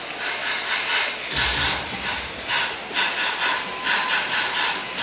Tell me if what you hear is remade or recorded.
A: recorded